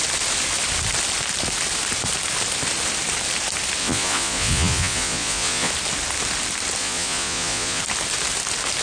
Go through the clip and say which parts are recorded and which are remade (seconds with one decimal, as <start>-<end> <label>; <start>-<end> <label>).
0.0-3.8 recorded; 3.8-5.7 remade; 5.7-6.8 recorded; 6.8-7.8 remade; 7.8-8.8 recorded